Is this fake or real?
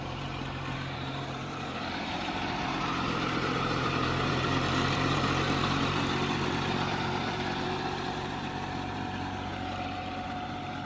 fake